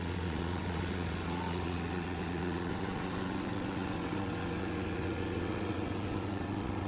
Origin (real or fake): fake